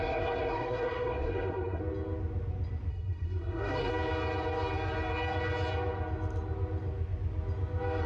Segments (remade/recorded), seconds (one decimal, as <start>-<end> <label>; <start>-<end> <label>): 0.0-1.8 remade; 1.8-2.9 recorded; 2.9-3.9 remade; 3.9-8.1 recorded